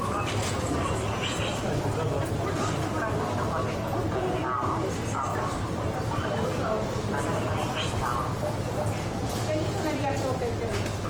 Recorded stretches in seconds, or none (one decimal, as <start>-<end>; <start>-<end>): 0.0-1.6; 3.2-5.3; 6.6-11.1